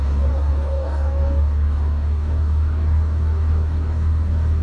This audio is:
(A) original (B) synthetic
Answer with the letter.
B